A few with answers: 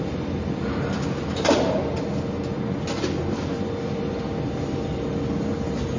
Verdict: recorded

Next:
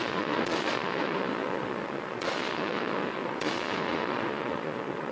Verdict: remade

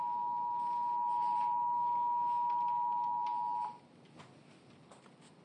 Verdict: recorded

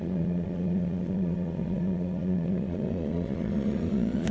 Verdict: remade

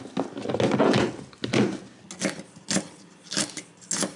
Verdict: recorded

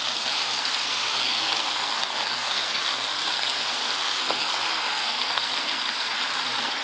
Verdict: remade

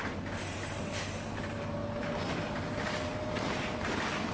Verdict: recorded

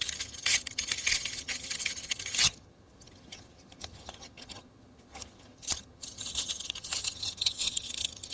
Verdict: remade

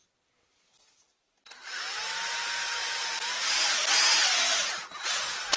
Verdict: recorded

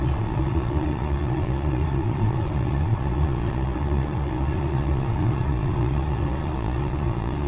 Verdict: remade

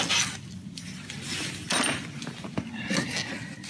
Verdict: recorded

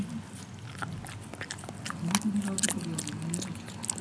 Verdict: recorded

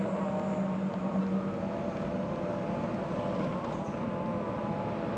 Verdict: recorded